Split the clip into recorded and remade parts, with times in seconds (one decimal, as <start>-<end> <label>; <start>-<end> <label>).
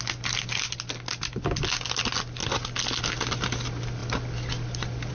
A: 0.0-5.1 recorded